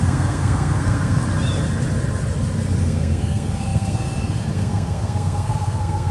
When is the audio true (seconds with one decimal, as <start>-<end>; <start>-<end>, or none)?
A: 1.2-2.8